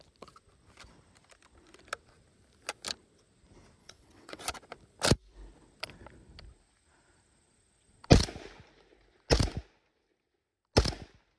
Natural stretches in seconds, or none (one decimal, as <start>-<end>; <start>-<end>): 0.0-3.8; 4.4-11.4